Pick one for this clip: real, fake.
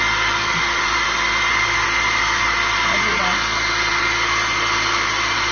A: real